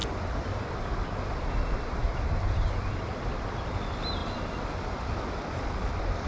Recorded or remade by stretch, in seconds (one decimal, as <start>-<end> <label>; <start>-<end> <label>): 0.0-3.1 remade; 3.1-6.3 recorded